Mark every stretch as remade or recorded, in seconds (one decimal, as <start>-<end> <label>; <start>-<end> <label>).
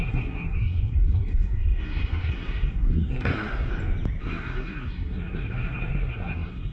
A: 0.0-3.7 remade; 3.7-4.2 recorded; 4.2-6.7 remade